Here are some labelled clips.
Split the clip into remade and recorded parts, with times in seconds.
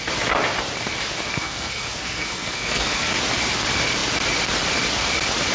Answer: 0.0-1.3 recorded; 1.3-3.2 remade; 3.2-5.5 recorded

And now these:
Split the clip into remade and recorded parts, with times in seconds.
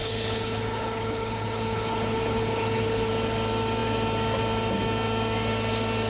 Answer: 0.0-3.1 remade; 3.1-6.1 recorded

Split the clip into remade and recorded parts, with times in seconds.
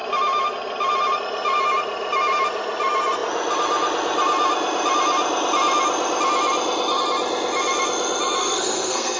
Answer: 0.0-8.4 recorded; 8.4-9.2 remade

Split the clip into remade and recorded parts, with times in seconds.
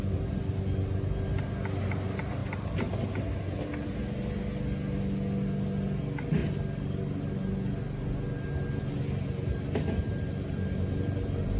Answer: 0.0-11.6 recorded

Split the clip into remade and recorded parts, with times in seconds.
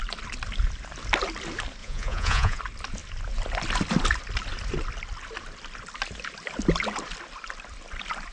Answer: 0.0-1.8 recorded; 1.8-2.6 remade; 2.6-8.3 recorded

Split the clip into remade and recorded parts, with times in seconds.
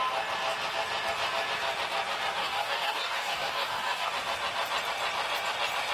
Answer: 0.0-2.4 recorded; 2.4-4.1 remade; 4.1-5.9 recorded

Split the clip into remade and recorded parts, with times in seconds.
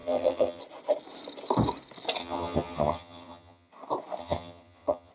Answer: 0.0-0.6 remade; 0.6-2.2 recorded; 2.2-3.7 remade; 3.7-4.2 recorded; 4.2-5.1 remade